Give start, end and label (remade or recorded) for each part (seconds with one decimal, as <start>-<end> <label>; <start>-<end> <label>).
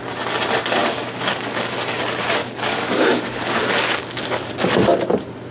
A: 0.0-0.8 recorded; 0.8-2.0 remade; 2.0-2.4 recorded; 2.4-4.5 remade; 4.5-5.5 recorded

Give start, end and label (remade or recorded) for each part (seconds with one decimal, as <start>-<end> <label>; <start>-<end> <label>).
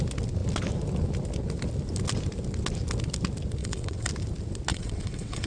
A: 0.0-3.6 recorded; 3.6-4.1 remade; 4.1-4.7 recorded; 4.7-5.5 remade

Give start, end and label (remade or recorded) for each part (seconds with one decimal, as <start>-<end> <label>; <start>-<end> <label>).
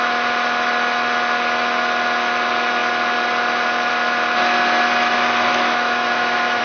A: 0.0-5.5 recorded; 5.5-6.6 remade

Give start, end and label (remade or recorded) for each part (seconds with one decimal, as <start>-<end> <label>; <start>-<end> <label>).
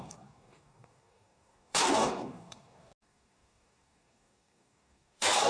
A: 0.0-5.5 remade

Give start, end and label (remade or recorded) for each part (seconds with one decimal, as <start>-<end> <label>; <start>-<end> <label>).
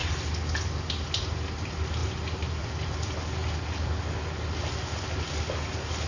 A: 0.0-6.1 recorded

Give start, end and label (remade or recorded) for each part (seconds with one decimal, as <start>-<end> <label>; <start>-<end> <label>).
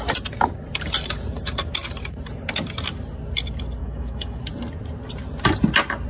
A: 0.0-3.8 recorded; 3.8-4.4 remade; 4.4-6.1 recorded